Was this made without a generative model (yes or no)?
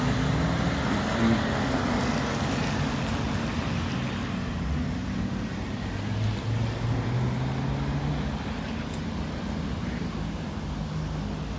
yes